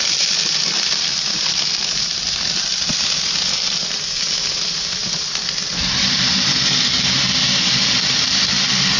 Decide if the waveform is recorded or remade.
recorded